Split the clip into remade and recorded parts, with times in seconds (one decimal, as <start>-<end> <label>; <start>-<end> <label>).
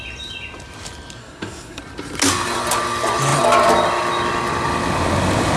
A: 0.0-1.2 recorded; 1.2-1.8 remade; 1.8-5.6 recorded